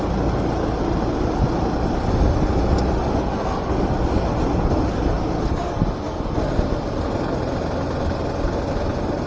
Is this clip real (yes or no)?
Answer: yes